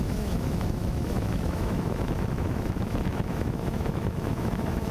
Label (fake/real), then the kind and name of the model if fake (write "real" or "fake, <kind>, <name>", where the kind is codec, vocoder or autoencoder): fake, autoencoder, DAC-VAE